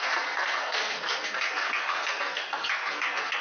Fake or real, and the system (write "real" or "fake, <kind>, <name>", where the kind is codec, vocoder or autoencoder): fake, codec, SNAC